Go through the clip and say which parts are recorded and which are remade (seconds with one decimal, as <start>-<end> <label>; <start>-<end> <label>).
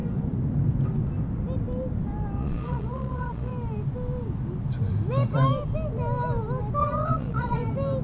0.0-2.4 recorded; 2.4-3.5 remade; 3.5-6.8 recorded; 6.8-7.6 remade; 7.6-8.0 recorded